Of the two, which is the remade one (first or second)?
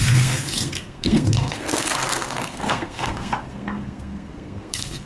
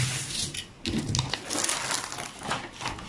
first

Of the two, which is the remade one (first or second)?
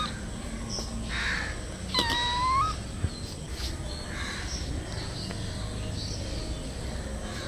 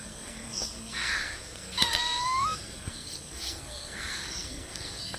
second